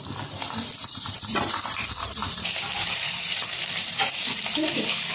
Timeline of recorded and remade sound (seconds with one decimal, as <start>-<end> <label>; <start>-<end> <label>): 0.0-0.9 recorded; 0.9-4.0 remade; 4.0-5.1 recorded